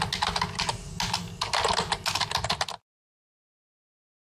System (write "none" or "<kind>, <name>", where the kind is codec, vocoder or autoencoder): none